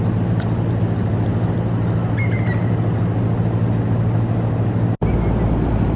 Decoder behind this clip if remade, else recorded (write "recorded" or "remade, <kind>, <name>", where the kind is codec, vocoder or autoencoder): recorded